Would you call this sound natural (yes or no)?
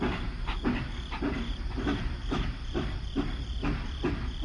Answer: no